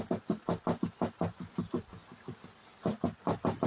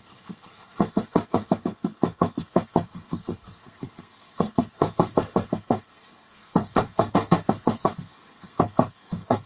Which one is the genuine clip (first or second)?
first